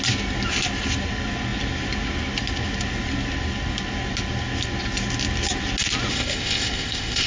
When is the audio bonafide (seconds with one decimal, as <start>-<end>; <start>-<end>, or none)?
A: 0.0-6.1

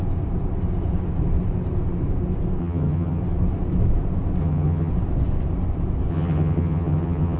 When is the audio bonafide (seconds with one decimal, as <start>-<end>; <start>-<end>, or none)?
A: 0.0-2.6; 3.2-4.4; 4.9-6.1

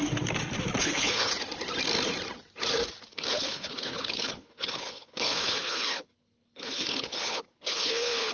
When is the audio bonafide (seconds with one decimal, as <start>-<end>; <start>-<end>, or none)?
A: 0.0-0.8; 1.3-3.1

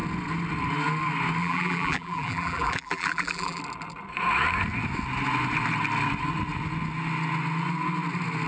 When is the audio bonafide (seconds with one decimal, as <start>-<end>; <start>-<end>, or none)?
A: 0.0-1.4; 3.6-8.5

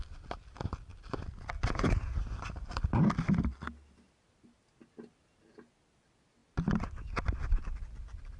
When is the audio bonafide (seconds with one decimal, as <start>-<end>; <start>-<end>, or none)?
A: 0.0-8.4

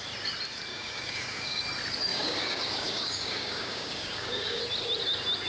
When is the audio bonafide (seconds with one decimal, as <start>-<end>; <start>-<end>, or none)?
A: 0.0-0.7; 1.6-2.1; 4.6-5.5

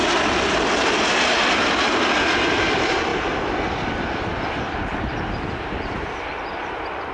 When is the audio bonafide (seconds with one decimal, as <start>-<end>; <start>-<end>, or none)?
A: 3.1-5.6

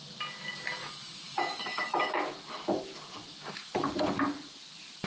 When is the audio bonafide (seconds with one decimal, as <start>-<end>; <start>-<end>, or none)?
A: 0.0-0.8; 3.9-5.1